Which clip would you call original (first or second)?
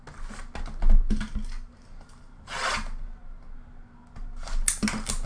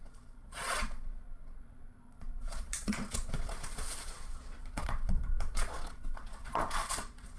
first